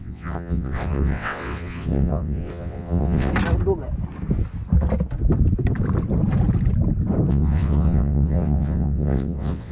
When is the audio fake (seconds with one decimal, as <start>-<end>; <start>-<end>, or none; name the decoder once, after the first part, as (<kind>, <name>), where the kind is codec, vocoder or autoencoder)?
0.0-3.3 (vocoder, WaveNeXt); 7.3-9.7